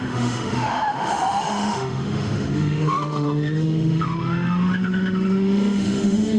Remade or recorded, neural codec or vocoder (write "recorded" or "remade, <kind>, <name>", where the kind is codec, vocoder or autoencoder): remade, autoencoder, DAC-VAE